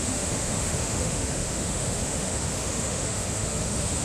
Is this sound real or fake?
fake